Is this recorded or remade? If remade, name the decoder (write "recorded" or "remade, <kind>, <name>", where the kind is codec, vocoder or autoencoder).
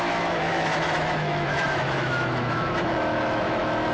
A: remade, autoencoder, DAC-VAE